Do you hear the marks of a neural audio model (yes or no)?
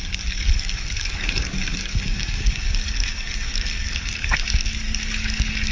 yes